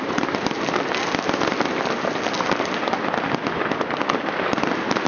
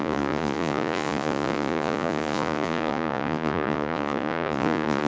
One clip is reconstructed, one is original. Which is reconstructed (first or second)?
second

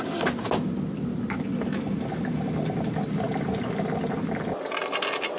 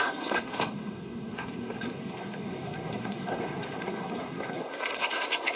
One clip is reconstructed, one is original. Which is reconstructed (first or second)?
second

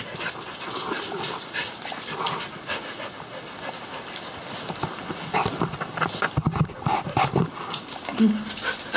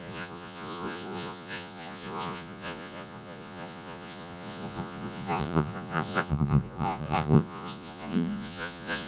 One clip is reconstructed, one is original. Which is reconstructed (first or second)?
second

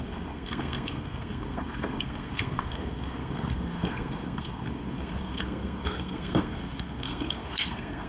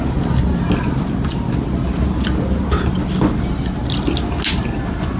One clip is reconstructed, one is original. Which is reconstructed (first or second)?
first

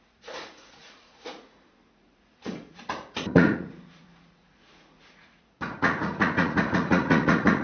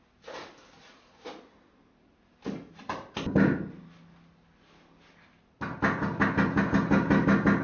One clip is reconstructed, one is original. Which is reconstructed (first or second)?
first